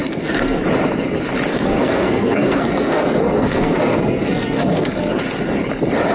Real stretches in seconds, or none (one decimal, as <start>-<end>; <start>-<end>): 0.6-1.5; 5.2-6.1